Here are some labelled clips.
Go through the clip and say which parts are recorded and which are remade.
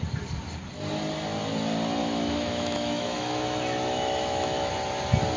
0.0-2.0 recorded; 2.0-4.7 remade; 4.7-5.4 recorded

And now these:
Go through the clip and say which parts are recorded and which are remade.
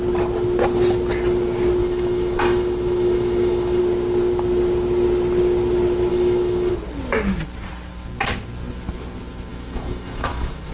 0.0-1.8 recorded; 1.8-3.8 remade; 3.8-6.1 recorded; 6.1-6.7 remade; 6.7-9.5 recorded; 9.5-10.7 remade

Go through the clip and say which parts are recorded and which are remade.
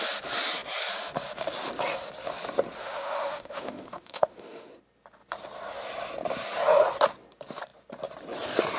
0.0-2.8 recorded; 2.8-4.7 remade; 4.7-8.8 recorded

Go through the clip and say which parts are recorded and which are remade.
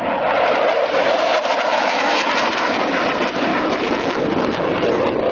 0.0-1.7 recorded; 1.7-2.3 remade; 2.3-3.5 recorded; 3.5-4.2 remade; 4.2-5.3 recorded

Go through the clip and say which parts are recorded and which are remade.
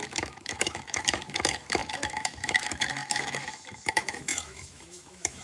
0.0-5.4 remade